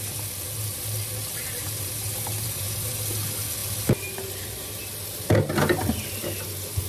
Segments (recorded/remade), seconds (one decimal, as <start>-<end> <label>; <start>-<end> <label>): 0.0-1.2 recorded; 1.2-2.9 remade; 2.9-6.9 recorded